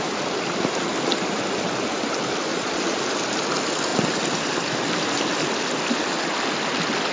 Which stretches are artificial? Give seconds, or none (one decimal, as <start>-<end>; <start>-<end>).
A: 2.5-3.0